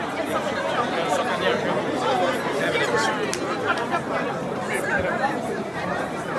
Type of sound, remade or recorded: recorded